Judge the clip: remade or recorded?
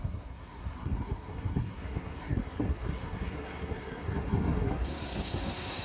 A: remade